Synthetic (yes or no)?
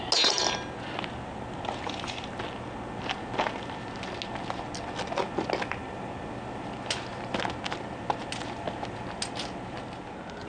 no